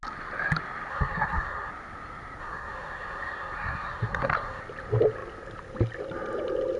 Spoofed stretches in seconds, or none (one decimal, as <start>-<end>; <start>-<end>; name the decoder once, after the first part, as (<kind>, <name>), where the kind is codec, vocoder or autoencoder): 0.9-1.7 (codec, SNAC); 2.4-4.6

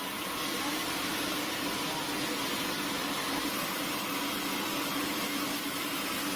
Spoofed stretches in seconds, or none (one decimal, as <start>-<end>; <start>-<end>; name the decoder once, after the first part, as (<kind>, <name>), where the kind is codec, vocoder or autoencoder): none